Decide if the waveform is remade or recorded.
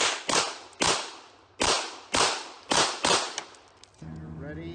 recorded